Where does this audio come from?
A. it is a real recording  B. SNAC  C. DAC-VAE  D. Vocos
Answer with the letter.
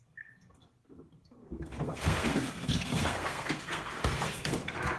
B